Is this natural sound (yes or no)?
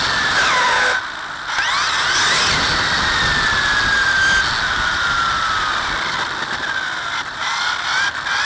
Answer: yes